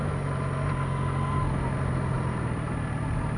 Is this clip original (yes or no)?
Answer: yes